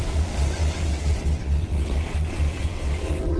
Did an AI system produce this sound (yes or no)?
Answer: yes